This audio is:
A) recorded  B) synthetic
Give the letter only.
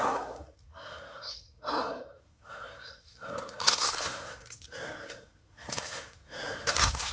B